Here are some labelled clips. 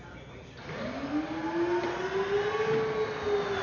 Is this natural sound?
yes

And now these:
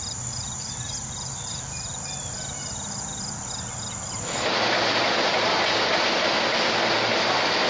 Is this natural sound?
yes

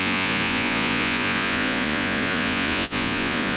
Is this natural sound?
no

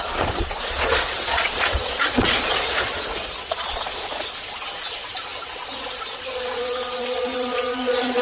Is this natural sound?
no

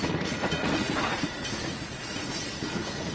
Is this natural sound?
no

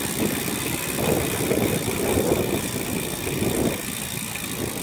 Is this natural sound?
yes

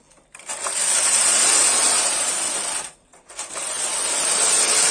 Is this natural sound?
yes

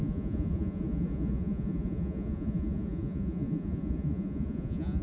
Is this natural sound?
no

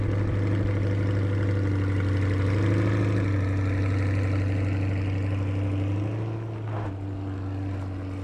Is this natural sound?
yes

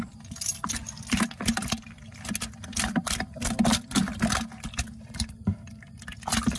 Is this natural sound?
yes